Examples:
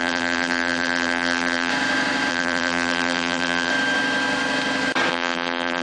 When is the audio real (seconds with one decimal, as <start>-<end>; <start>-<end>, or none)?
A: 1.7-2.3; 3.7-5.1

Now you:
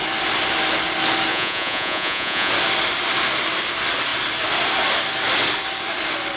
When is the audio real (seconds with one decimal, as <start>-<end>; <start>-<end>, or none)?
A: 0.0-1.3; 2.5-6.4

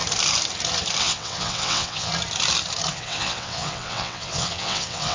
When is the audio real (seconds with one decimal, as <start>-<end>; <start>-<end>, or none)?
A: 0.0-1.0; 2.1-2.9